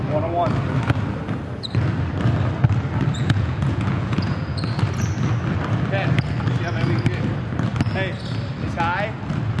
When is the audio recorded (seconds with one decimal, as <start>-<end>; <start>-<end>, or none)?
0.0-3.2; 4.6-9.6